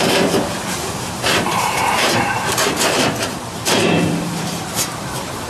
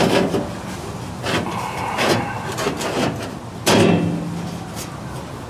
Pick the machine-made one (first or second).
first